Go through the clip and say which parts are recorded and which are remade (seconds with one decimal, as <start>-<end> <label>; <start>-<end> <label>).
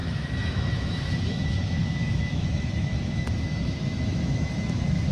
0.0-5.1 remade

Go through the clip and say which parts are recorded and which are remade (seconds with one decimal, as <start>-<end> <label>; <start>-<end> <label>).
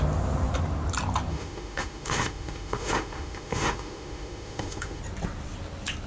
0.0-1.3 recorded; 1.3-5.0 remade; 5.0-6.1 recorded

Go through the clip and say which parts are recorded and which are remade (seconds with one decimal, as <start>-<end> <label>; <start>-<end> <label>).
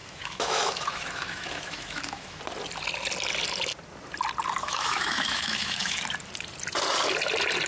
0.0-2.4 remade; 2.4-4.6 recorded; 4.6-6.0 remade; 6.0-7.7 recorded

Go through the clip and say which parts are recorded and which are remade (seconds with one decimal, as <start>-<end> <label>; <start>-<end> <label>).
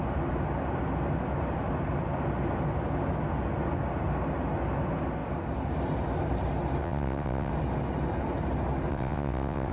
0.0-6.8 recorded; 6.8-7.5 remade; 7.5-8.9 recorded; 8.9-9.7 remade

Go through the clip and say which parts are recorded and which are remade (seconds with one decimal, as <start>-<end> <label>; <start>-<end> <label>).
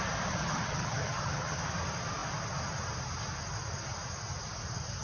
0.0-0.4 recorded; 0.4-1.6 remade; 1.6-5.0 recorded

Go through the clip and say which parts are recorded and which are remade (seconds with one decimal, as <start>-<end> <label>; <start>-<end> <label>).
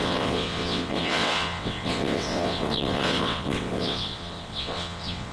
0.0-5.3 remade